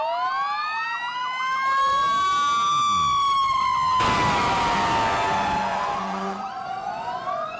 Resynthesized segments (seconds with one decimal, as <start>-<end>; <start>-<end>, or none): 5.7-7.6